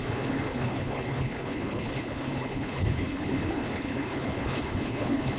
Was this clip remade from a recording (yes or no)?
yes